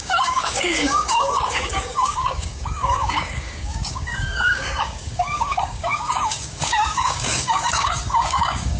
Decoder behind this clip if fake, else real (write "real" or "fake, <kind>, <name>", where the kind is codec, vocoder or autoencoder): fake, codec, DAC